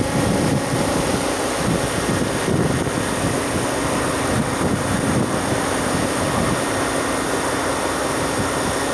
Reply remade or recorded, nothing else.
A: recorded